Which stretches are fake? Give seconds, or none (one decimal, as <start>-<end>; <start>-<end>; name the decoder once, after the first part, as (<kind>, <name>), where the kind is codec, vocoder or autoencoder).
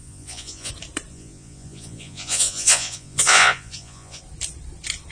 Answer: 0.0-0.7 (vocoder, Vocos); 1.1-4.2